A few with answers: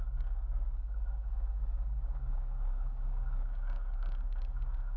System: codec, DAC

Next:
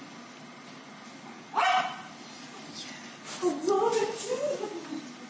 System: none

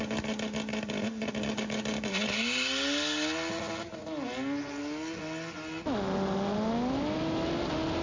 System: none